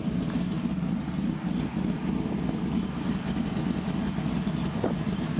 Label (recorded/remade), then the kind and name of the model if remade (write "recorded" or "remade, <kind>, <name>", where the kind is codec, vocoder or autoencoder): recorded